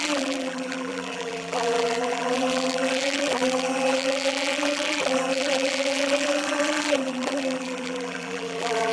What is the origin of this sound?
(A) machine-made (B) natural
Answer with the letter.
A